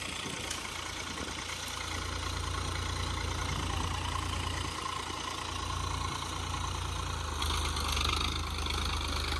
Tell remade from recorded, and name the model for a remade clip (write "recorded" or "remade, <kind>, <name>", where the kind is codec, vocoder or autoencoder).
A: recorded